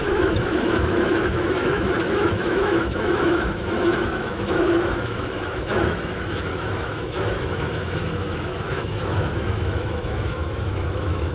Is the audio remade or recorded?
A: remade